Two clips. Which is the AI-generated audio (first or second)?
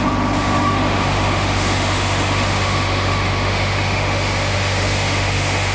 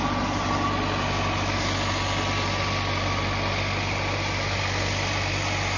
first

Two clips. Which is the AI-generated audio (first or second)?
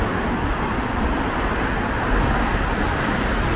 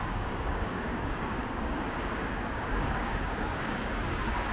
second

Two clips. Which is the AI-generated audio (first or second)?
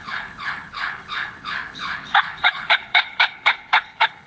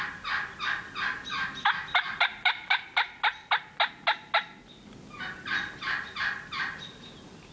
first